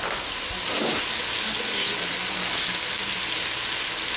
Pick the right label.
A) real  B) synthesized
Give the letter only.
A